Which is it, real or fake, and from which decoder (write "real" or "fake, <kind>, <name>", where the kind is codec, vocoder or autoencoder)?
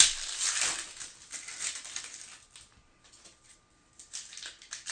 real